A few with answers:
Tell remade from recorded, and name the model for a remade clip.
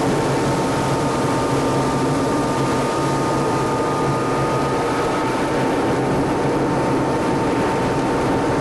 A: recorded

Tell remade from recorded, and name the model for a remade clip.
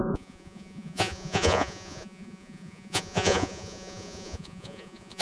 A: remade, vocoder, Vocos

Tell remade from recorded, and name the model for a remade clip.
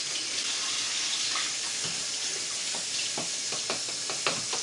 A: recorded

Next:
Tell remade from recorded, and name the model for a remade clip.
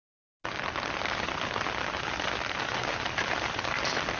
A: recorded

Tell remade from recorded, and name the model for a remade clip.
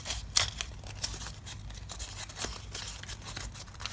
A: recorded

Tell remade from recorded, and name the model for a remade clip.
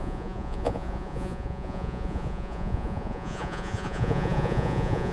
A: remade, vocoder, Vocos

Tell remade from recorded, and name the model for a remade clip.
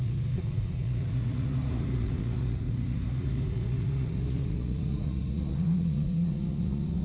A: remade, vocoder, Vocos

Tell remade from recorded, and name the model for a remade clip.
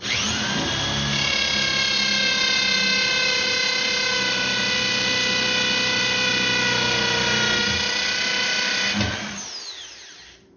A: recorded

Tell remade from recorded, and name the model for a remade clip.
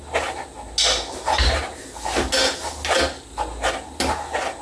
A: recorded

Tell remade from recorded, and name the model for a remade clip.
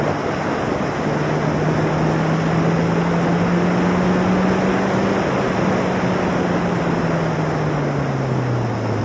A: recorded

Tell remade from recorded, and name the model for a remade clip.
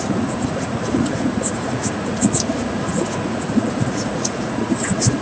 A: remade, vocoder, Vocos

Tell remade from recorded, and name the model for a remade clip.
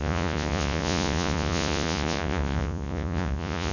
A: remade, vocoder, Vocos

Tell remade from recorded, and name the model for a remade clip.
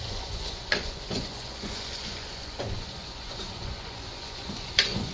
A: remade, vocoder, Vocos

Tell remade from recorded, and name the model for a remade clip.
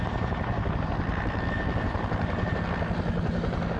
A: recorded